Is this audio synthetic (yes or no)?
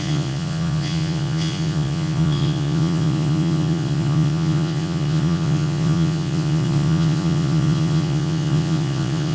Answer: yes